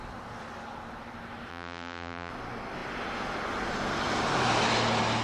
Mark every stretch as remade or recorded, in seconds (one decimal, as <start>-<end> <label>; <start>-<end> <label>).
0.0-1.5 recorded; 1.5-2.3 remade; 2.3-5.2 recorded